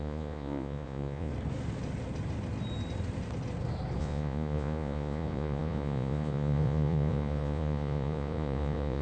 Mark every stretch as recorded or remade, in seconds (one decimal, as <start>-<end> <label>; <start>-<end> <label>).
0.0-1.3 remade; 1.3-4.0 recorded; 4.0-9.0 remade